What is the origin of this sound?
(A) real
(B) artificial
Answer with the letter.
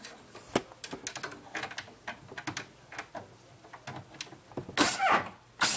A